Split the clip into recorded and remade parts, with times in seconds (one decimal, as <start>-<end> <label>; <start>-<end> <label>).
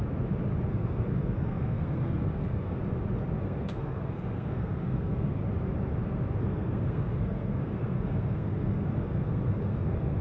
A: 0.0-0.7 recorded; 0.7-2.8 remade; 2.8-3.4 recorded; 3.4-5.4 remade; 5.4-6.4 recorded; 6.4-10.2 remade